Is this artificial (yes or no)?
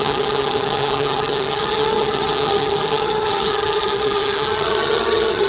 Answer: yes